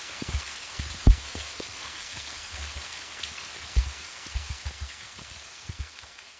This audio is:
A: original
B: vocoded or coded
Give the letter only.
B